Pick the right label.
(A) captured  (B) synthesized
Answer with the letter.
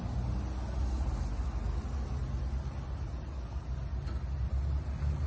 A